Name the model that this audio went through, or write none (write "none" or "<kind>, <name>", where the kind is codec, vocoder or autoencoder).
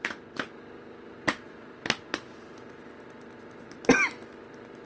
none